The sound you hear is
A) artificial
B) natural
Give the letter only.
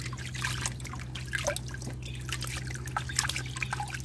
B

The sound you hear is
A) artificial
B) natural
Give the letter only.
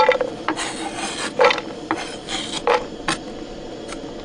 B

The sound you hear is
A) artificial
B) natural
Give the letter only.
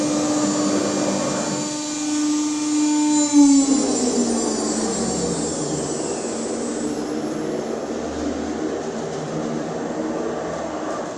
B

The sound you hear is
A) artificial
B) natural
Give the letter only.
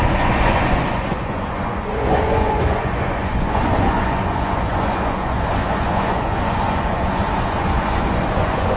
A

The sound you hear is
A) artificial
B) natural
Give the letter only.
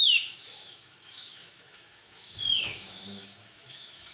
A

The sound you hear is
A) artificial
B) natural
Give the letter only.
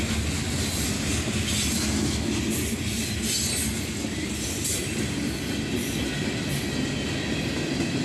B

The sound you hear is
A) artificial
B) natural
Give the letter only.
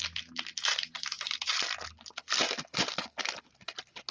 B